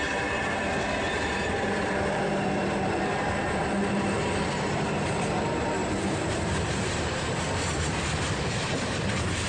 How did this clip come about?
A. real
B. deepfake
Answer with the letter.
B